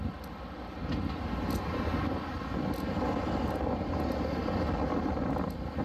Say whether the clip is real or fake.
real